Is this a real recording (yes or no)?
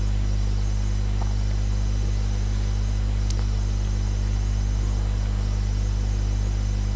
yes